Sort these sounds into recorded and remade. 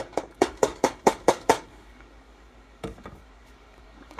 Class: remade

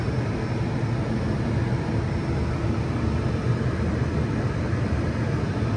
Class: recorded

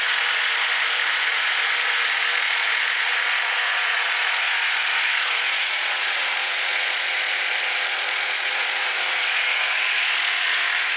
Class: remade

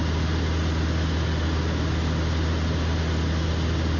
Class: recorded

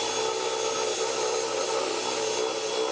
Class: recorded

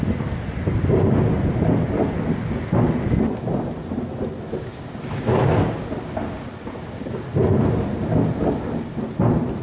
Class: recorded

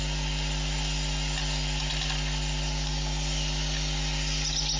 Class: recorded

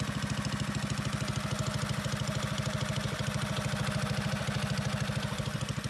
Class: recorded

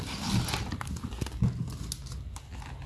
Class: recorded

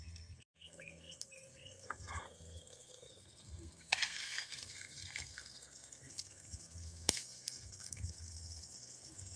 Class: remade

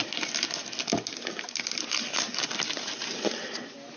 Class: recorded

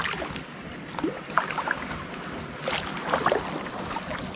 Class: recorded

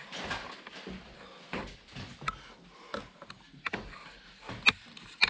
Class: recorded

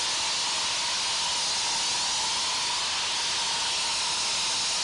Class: recorded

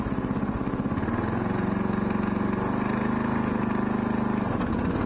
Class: recorded